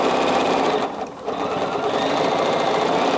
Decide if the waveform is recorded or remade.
recorded